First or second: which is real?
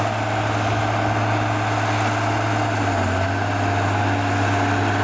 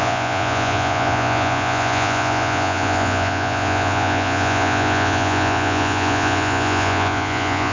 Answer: first